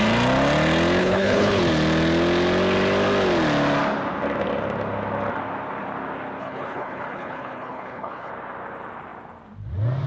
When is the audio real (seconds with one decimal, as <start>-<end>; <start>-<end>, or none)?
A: 0.0-1.0; 1.6-6.4; 8.3-10.1